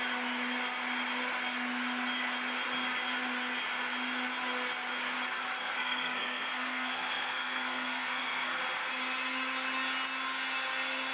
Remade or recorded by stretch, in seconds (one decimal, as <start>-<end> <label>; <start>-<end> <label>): 0.0-5.6 recorded; 5.6-8.6 remade; 8.6-11.1 recorded